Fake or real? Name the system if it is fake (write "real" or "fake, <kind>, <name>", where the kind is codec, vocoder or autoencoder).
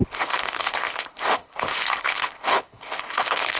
fake, codec, HILCodec